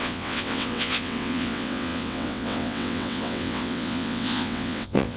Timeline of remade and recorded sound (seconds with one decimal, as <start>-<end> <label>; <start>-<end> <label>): 0.0-5.2 remade